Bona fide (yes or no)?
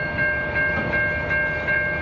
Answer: yes